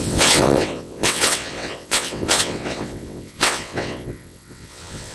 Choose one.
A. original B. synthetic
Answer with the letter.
B